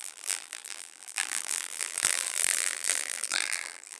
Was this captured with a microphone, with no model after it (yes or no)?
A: no